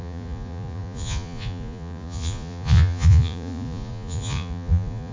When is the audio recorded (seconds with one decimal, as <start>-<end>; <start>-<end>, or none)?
none